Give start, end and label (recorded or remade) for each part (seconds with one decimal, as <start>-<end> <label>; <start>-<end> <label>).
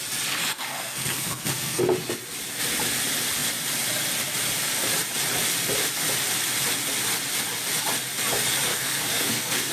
0.0-0.4 recorded; 0.4-1.8 remade; 1.8-8.7 recorded; 8.7-9.7 remade